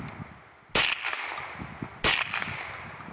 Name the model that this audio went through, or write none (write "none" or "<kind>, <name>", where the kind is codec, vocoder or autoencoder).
none